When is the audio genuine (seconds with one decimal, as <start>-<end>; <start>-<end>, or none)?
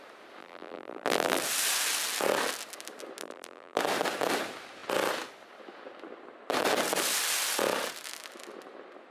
0.0-0.4; 1.4-3.2; 3.8-9.1